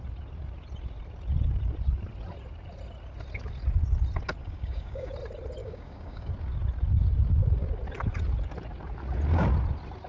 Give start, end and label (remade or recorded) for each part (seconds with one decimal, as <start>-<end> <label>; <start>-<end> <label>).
0.0-4.4 recorded; 4.4-5.1 remade; 5.1-5.6 recorded; 5.6-6.3 remade; 6.3-10.1 recorded